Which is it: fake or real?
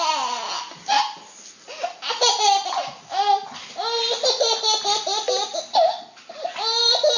real